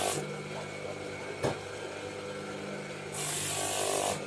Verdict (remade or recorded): recorded